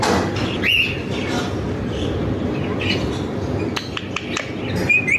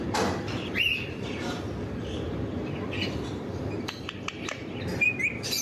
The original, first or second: first